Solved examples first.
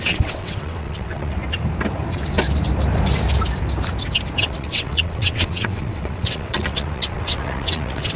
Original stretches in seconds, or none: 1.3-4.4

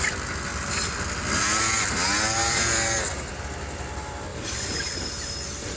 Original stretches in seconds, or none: 0.0-0.5; 1.6-2.4; 3.3-4.3; 4.9-5.8

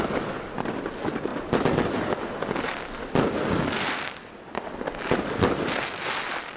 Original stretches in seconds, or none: 0.0-6.6

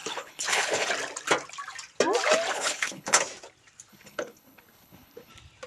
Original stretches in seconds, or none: 0.9-2.5; 3.2-3.9; 5.3-5.7

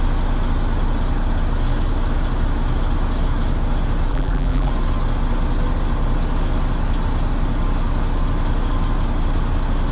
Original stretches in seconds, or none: 0.0-4.1; 4.7-9.9